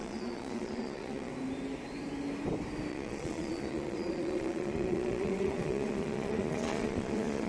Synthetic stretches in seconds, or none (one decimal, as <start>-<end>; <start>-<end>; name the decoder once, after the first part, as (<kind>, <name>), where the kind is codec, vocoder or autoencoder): 0.0-1.3 (vocoder, Vocos); 2.9-7.5